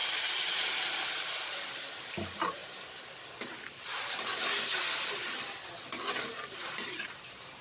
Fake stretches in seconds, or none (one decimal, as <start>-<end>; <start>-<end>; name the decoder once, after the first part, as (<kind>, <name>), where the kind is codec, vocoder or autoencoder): 0.5-2.6 (vocoder, BigVGAN v2); 3.5-4.3; 6.3-7.6